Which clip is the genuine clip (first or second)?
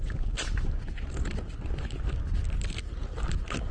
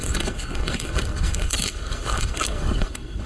first